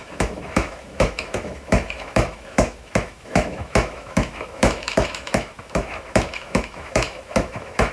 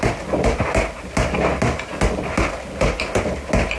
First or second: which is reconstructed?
first